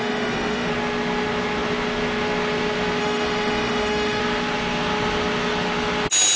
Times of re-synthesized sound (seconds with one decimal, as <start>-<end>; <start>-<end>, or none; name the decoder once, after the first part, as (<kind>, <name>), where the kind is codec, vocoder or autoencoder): 0.0-0.7 (autoencoder, DAC-VAE); 3.0-4.2